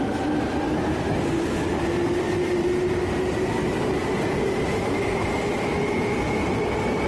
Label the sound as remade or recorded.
recorded